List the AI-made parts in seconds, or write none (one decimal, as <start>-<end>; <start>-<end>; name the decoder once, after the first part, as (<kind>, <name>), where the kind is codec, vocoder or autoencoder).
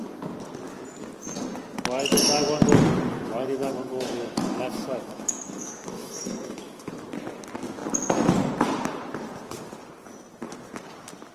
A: 3.1-6.9 (autoencoder, DAC-VAE)